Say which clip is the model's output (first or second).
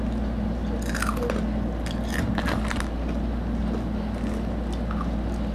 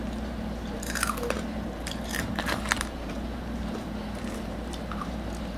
second